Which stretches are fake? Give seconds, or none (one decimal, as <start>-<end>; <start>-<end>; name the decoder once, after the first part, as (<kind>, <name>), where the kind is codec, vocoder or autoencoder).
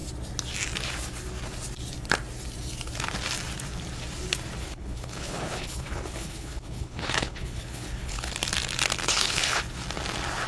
4.6-8.3 (codec, HILCodec); 9.0-9.6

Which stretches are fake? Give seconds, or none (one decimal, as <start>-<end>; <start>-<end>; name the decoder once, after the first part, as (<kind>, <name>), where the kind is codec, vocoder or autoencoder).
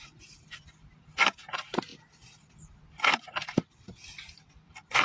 none